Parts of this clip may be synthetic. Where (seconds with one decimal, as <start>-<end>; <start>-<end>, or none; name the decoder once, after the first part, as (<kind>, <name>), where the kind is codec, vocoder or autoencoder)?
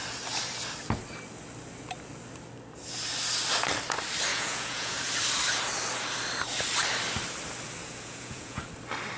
4.3-5.0 (vocoder, Vocos); 7.8-8.7